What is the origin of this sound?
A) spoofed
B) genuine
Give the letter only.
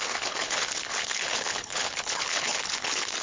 A